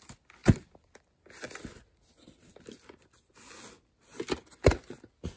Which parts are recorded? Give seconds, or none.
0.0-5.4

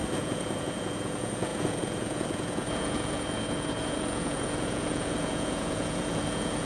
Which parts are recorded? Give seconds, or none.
none